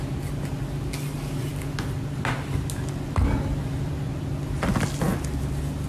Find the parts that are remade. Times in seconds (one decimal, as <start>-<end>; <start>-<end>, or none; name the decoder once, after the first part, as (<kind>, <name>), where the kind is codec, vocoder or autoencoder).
none